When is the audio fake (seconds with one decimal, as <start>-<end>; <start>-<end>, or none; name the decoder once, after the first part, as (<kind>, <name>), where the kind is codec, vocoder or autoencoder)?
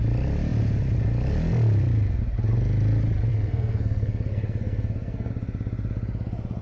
3.3-5.3 (codec, SNAC)